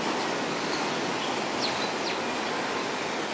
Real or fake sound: real